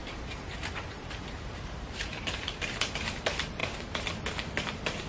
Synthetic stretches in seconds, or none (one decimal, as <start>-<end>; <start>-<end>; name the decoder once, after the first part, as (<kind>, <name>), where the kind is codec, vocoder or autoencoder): 0.0-3.6 (vocoder, BigVGAN v2); 4.6-5.1